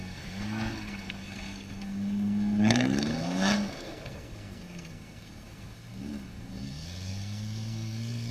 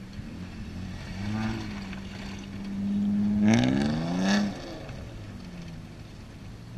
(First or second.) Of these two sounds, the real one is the second